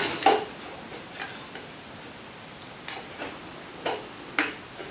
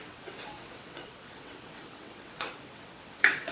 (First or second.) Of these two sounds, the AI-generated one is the second